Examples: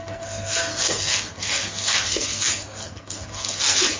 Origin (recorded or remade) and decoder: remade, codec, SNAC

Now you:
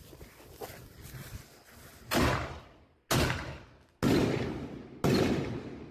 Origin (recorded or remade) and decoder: recorded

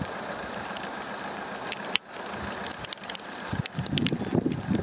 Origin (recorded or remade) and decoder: recorded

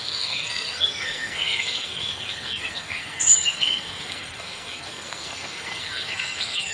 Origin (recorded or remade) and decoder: remade, codec, SNAC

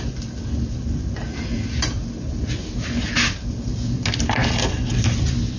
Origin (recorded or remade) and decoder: recorded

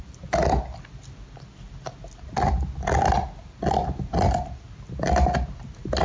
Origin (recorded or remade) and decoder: recorded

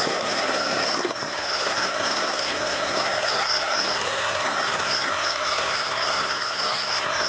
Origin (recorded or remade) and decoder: remade, codec, SNAC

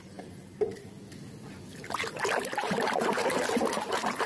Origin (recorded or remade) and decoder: recorded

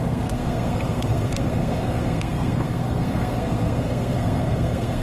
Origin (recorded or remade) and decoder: remade, codec, SNAC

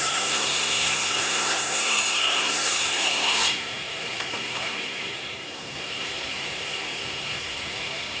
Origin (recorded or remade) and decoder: remade, codec, SNAC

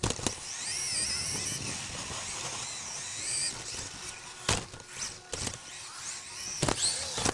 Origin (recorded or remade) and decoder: recorded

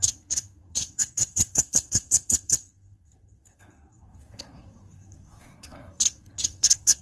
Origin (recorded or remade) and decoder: remade, codec, SNAC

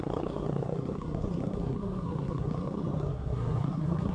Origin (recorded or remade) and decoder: remade, codec, SNAC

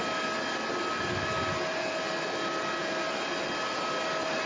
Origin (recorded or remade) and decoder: recorded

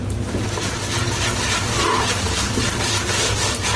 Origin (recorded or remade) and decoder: recorded